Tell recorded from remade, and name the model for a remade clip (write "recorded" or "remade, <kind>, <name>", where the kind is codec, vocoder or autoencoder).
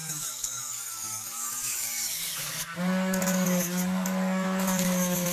remade, codec, DAC